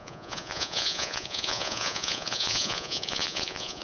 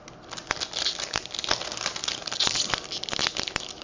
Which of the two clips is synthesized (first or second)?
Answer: first